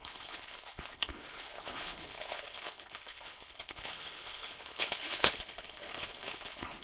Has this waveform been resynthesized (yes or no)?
yes